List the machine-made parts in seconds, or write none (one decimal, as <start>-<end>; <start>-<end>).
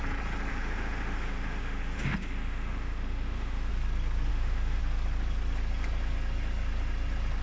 0.5-3.7; 4.3-4.8